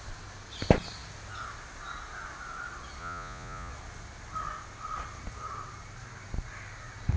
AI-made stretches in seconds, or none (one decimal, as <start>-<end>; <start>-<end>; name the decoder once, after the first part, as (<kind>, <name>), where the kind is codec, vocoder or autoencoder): 3.0-3.7 (vocoder, Vocos)